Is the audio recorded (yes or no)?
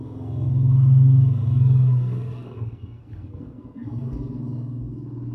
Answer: no